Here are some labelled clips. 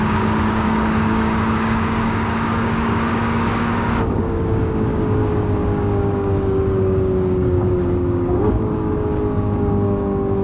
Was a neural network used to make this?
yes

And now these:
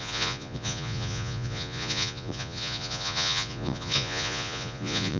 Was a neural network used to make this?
yes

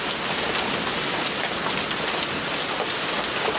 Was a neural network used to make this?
no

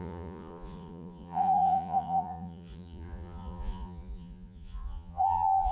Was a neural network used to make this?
yes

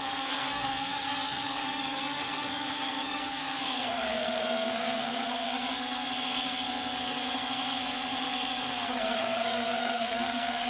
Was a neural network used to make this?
yes